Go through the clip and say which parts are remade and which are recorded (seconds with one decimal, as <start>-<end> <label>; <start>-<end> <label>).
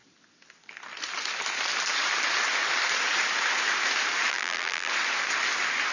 0.0-4.3 recorded; 4.3-4.9 remade; 4.9-5.9 recorded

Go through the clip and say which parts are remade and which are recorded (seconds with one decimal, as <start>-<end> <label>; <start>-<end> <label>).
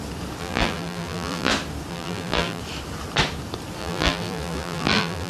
0.0-0.4 recorded; 0.4-1.5 remade; 1.5-1.9 recorded; 1.9-2.6 remade; 2.6-3.8 recorded; 3.8-5.3 remade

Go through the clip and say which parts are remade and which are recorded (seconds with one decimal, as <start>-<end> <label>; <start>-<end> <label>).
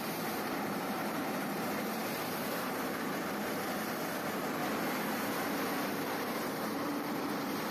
0.0-4.6 remade; 4.6-5.9 recorded; 5.9-7.7 remade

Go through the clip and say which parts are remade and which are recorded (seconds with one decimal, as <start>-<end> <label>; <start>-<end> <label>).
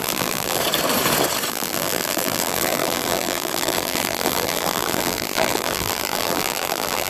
0.0-0.6 remade; 0.6-1.5 recorded; 1.5-7.1 remade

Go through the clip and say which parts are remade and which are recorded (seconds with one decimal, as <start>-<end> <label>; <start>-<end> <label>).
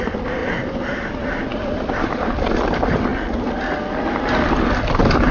0.0-0.4 recorded; 0.4-1.1 remade; 1.1-5.3 recorded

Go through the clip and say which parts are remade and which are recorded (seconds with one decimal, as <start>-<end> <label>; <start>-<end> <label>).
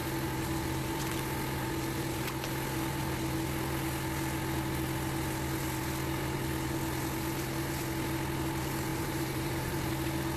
0.0-8.9 recorded; 8.9-9.9 remade; 9.9-10.4 recorded